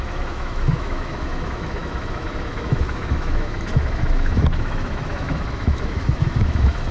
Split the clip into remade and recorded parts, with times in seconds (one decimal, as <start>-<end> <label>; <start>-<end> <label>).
0.0-6.9 remade